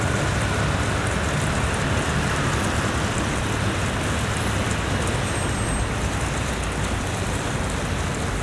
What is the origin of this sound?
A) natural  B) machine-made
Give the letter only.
A